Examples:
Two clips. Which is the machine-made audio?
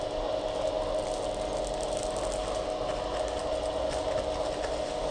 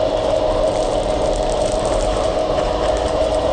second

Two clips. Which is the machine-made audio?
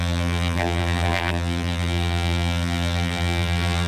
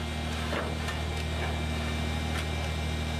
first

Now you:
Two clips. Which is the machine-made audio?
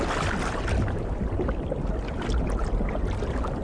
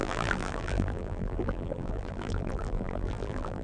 second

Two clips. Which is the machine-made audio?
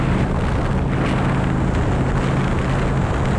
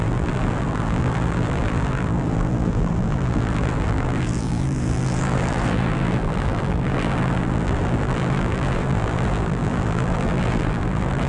second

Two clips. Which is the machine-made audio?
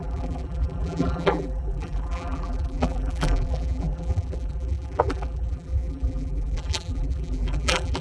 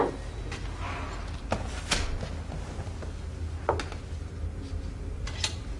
first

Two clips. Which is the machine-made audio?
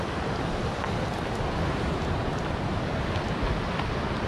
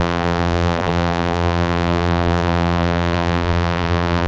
second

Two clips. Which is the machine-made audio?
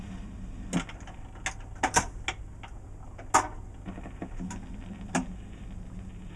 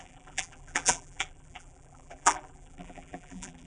second